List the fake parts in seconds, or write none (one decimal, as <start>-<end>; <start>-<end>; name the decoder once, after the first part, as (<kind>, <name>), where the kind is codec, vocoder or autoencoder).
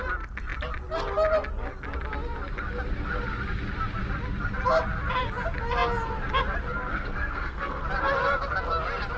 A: 6.9-7.8 (codec, SNAC)